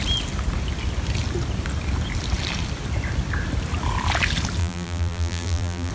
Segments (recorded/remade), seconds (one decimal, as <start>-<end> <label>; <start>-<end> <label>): 0.0-4.6 recorded; 4.6-5.9 remade